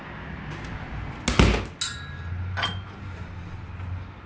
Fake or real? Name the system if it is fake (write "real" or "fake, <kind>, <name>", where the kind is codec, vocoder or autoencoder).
real